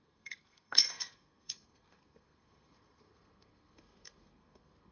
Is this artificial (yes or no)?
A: yes